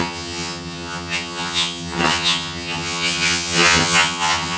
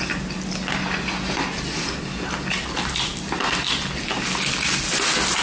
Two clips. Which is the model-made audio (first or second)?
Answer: first